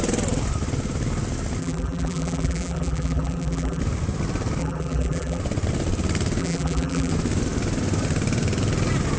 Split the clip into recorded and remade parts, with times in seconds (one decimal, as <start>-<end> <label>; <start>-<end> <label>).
0.0-1.6 recorded; 1.6-3.8 remade; 3.8-4.6 recorded; 4.6-5.4 remade; 5.4-6.4 recorded; 6.4-7.1 remade; 7.1-9.2 recorded